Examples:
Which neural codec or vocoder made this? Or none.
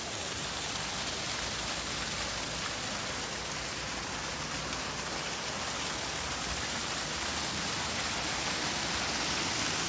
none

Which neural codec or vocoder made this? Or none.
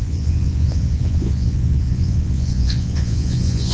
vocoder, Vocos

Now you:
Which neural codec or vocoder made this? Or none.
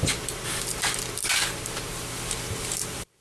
vocoder, BigVGAN v2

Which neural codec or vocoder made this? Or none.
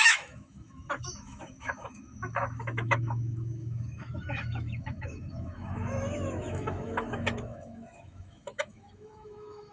autoencoder, DAC-VAE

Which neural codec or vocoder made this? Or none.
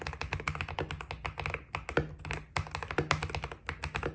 none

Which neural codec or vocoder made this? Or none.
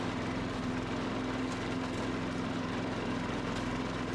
none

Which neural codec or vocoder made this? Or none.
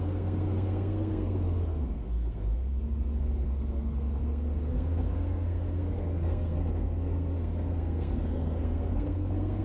codec, SNAC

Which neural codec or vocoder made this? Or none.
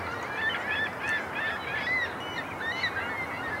none